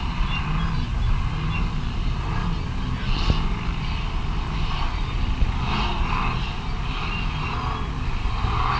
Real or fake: real